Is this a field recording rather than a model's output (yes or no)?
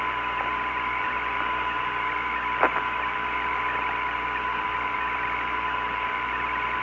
no